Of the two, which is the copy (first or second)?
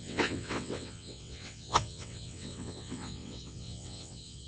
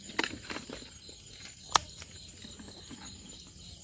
first